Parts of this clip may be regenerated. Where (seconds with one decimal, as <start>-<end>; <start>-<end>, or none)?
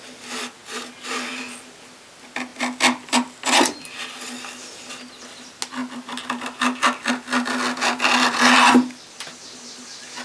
none